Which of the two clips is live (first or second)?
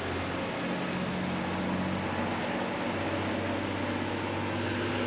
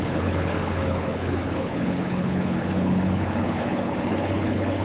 first